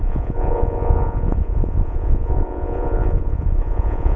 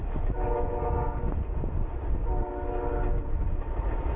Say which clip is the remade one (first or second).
first